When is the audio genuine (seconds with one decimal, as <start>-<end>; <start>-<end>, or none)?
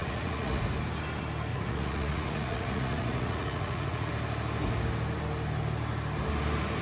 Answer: 0.6-1.5; 4.1-6.8